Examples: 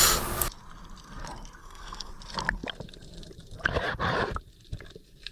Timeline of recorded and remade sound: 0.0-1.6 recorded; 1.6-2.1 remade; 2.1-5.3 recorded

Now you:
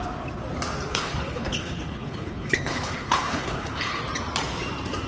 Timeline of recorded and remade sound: 0.0-0.9 recorded; 0.9-4.0 remade; 4.0-5.1 recorded

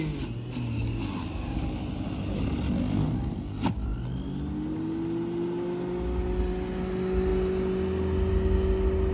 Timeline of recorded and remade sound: 0.0-9.1 recorded

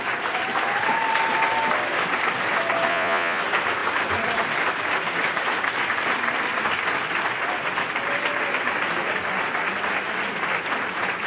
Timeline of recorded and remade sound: 0.0-2.9 recorded; 2.9-3.4 remade; 3.4-11.3 recorded

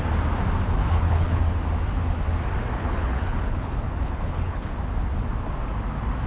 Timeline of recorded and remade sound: 0.0-0.8 recorded; 0.8-1.4 remade; 1.4-2.8 recorded; 2.8-4.7 remade; 4.7-6.3 recorded

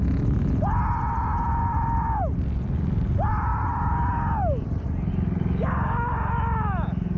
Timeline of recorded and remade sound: 0.0-3.5 recorded; 3.5-5.1 remade; 5.1-7.2 recorded

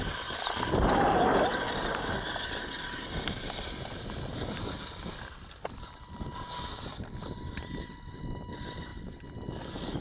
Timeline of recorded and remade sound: 0.0-10.0 remade

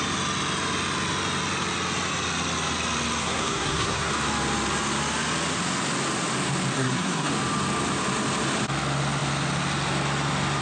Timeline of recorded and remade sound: 0.0-3.2 recorded; 3.2-4.1 remade; 4.1-6.7 recorded; 6.7-7.3 remade; 7.3-10.6 recorded